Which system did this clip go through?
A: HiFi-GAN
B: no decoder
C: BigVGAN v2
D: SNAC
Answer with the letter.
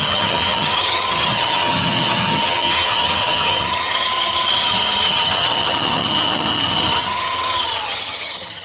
A